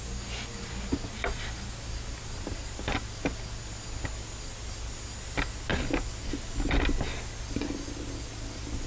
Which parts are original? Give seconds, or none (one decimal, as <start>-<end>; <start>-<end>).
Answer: 0.0-8.9